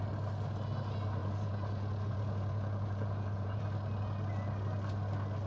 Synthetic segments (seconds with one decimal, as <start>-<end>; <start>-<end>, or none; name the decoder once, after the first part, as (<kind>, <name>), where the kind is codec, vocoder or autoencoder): 1.2-3.6 (vocoder, Vocos)

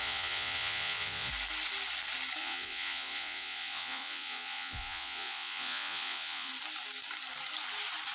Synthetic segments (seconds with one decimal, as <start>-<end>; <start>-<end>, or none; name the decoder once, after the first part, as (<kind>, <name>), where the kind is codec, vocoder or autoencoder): 0.0-1.3 (vocoder, Vocos); 2.4-6.5

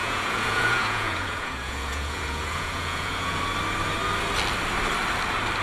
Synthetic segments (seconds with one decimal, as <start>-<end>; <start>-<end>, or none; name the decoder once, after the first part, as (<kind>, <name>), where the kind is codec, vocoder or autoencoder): 0.0-3.4 (vocoder, Vocos)